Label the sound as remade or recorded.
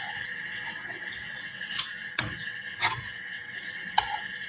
remade